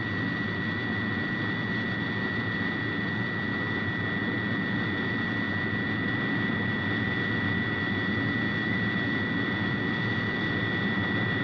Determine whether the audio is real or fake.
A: real